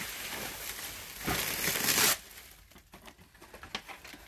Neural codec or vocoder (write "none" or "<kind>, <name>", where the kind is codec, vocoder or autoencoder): none